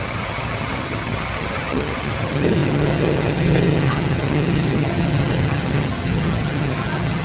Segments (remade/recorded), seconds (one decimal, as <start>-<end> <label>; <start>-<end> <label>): 0.0-7.2 remade